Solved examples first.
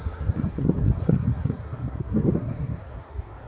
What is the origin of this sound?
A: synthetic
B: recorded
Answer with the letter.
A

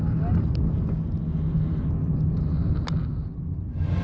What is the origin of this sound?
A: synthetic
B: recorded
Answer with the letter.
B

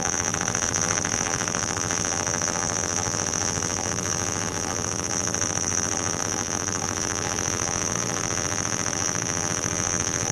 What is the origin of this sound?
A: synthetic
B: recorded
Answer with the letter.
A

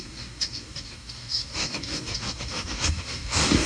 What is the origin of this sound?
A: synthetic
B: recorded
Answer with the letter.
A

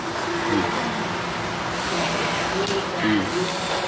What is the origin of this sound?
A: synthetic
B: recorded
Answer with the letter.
B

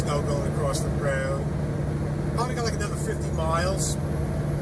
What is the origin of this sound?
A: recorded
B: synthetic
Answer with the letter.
A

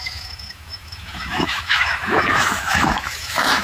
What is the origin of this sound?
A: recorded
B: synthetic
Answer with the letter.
B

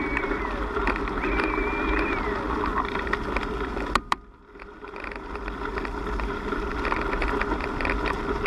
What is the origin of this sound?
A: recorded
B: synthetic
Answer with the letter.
A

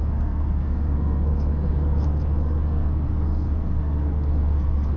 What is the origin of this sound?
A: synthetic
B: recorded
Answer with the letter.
A